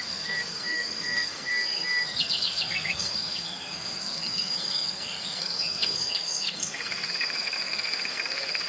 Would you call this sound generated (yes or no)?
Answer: yes